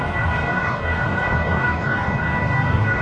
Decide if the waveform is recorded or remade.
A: remade